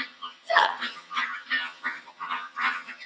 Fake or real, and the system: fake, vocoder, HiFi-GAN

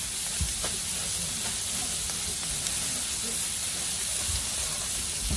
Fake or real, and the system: real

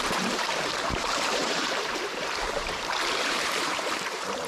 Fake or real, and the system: fake, vocoder, BigVGAN v2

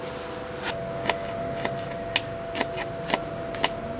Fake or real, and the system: real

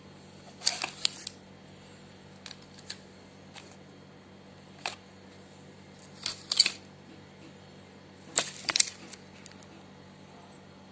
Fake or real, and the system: real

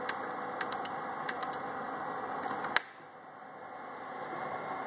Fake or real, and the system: real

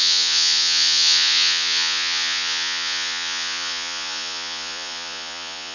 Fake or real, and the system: fake, vocoder, Vocos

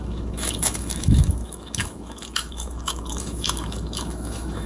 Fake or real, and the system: fake, autoencoder, DAC-VAE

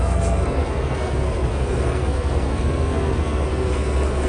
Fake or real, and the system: fake, codec, SNAC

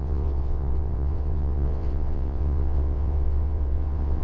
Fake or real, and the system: fake, vocoder, WaveNeXt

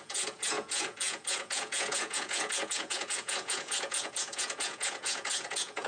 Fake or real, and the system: fake, vocoder, Vocos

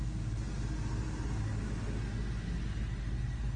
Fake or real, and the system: real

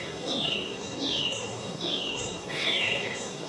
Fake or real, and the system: fake, codec, SNAC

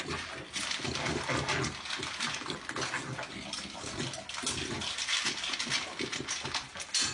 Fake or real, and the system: real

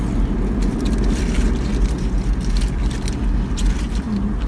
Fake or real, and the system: real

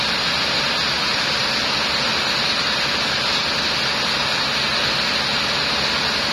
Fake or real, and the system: real